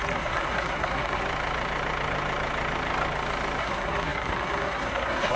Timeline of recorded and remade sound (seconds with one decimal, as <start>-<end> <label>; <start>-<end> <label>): 0.0-1.2 remade; 1.2-3.6 recorded; 3.6-5.4 remade